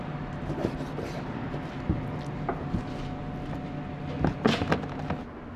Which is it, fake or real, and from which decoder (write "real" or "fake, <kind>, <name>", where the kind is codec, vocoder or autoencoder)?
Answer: real